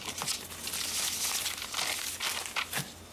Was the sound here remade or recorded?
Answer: recorded